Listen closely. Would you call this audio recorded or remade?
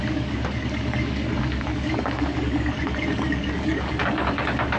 remade